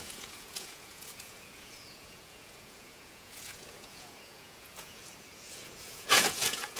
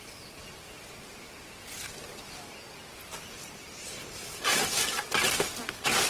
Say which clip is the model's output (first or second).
first